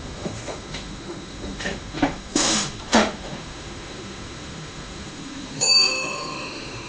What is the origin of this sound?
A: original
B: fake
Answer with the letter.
B